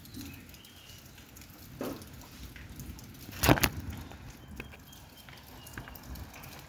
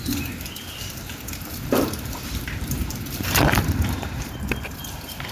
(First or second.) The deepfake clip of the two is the second